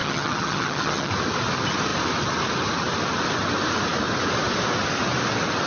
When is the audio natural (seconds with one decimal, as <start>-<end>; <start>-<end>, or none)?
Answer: 1.1-5.7